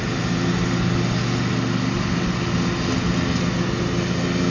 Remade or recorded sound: recorded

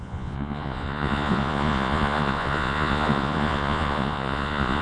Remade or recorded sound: remade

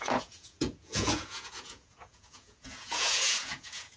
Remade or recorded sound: remade